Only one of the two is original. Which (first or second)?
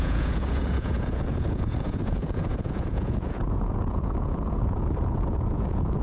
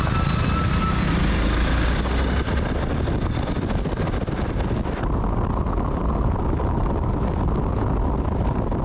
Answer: second